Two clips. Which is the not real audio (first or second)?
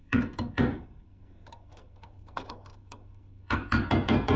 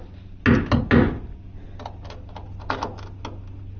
first